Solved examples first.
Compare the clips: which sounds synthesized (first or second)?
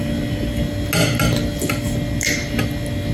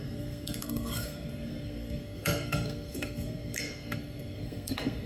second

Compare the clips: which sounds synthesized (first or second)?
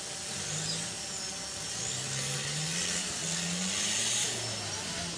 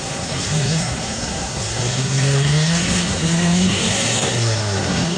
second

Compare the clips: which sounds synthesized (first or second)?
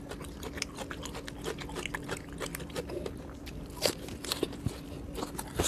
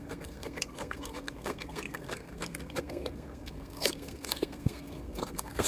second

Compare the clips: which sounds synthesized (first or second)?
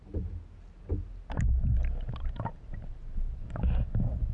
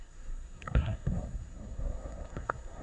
second